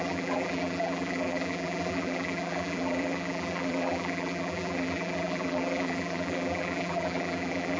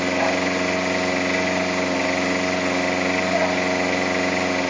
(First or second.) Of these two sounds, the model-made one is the first